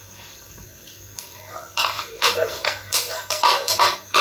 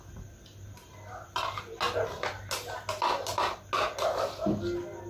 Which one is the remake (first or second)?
first